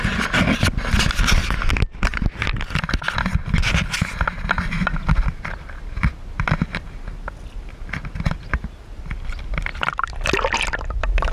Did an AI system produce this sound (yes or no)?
no